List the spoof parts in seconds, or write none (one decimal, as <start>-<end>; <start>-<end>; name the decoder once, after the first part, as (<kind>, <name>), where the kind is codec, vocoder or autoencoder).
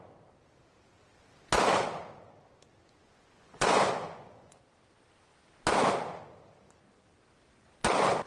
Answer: 2.8-4.6 (vocoder, Vocos)